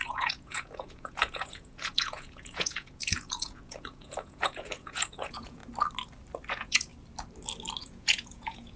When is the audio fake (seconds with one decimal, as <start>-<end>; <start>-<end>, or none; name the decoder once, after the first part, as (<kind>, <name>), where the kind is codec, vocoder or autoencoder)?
0.0-5.6 (vocoder, Vocos); 6.5-6.9; 7.8-8.8